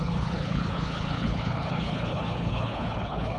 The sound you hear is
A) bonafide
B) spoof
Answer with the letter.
B